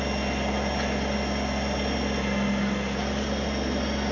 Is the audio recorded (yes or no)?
yes